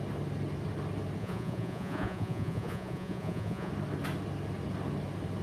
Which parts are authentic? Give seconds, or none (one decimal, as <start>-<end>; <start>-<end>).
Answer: 0.0-1.2; 3.7-5.4